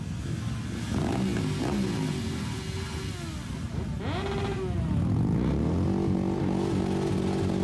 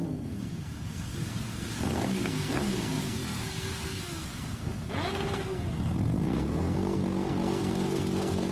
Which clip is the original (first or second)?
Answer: first